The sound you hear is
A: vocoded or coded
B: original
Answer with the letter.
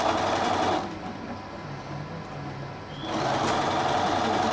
B